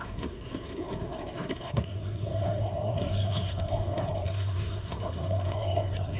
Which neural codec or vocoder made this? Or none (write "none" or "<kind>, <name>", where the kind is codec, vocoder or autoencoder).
codec, SNAC